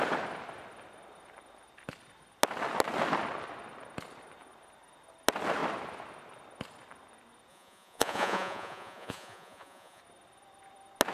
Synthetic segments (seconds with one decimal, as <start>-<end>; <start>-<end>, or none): 7.5-10.0